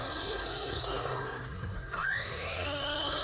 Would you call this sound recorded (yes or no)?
no